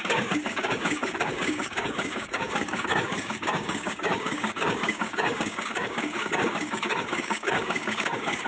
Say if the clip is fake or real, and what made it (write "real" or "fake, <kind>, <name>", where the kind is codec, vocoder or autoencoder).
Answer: fake, codec, DAC